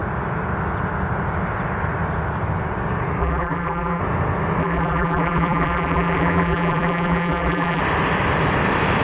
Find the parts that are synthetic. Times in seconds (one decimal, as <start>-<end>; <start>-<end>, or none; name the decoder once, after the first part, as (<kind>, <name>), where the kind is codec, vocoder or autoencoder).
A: 3.2-4.0 (vocoder, BigVGAN v2); 4.6-7.8

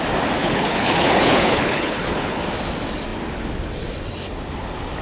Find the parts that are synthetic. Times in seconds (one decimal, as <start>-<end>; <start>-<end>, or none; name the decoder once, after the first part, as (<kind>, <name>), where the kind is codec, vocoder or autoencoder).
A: 0.4-2.4 (codec, HILCodec)